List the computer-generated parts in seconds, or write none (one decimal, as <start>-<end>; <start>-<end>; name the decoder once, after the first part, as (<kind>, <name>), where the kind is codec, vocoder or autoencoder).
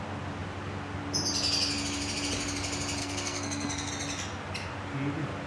3.0-3.9 (codec, SNAC)